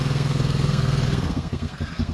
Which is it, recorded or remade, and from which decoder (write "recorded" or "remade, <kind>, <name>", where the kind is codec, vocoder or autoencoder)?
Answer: remade, codec, SNAC